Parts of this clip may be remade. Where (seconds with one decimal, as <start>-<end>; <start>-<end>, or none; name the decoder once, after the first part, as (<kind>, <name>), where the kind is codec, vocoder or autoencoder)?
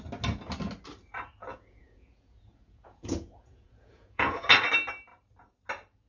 1.5-4.5 (vocoder, Vocos)